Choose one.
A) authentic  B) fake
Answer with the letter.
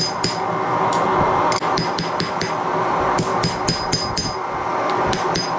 A